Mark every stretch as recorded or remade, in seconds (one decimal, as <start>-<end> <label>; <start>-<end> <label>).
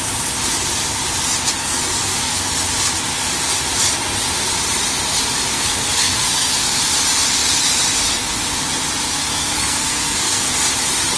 0.0-1.6 recorded; 1.6-2.5 remade; 2.5-5.5 recorded; 5.5-6.8 remade; 6.8-9.2 recorded; 9.2-10.5 remade; 10.5-11.2 recorded